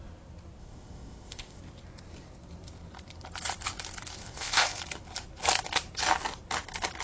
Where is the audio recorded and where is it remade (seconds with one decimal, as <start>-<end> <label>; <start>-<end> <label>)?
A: 0.0-0.6 recorded; 0.6-1.6 remade; 1.6-4.2 recorded; 4.2-4.8 remade; 4.8-7.0 recorded